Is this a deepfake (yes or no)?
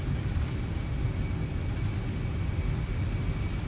no